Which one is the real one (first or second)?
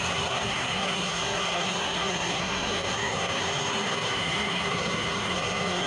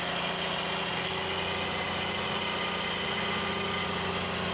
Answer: second